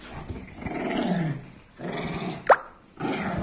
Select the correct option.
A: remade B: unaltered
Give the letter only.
B